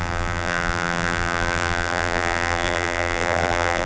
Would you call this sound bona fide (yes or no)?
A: no